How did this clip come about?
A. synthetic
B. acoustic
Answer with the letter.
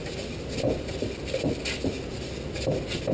B